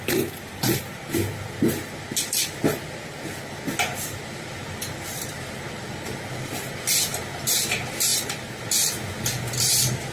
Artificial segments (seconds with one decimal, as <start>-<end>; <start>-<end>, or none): none